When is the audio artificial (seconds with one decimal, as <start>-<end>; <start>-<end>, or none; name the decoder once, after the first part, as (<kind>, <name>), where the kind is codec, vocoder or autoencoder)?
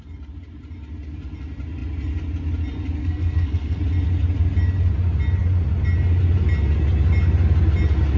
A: 3.0-3.8 (codec, SNAC)